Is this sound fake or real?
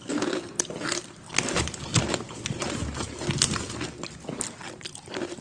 real